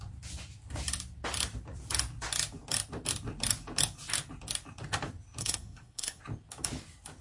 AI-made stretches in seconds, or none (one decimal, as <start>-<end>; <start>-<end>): 5.4-6.2